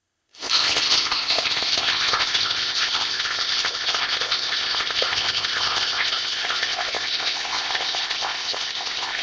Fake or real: fake